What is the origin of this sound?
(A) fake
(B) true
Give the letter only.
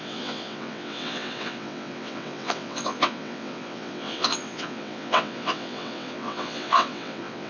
A